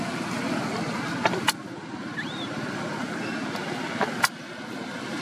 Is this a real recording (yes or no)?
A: yes